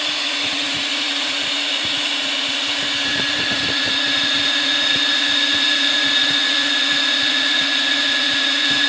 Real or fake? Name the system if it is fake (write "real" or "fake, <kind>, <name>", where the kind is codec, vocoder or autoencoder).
fake, vocoder, Vocos